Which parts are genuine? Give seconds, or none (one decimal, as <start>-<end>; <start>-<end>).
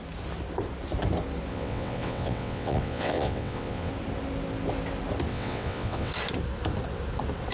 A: 0.0-1.5; 3.9-5.3; 6.1-7.5